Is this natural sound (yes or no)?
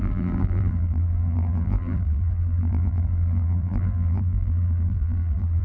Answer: no